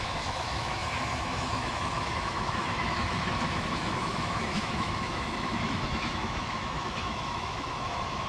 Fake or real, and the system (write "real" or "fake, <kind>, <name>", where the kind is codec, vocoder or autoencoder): fake, autoencoder, DAC-VAE